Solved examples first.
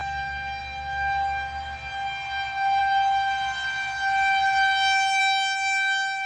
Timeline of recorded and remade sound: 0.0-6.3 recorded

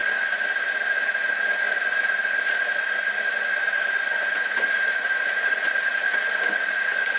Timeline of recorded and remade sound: 0.0-4.3 recorded; 4.3-7.2 remade